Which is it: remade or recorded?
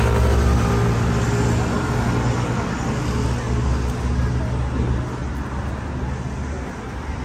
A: recorded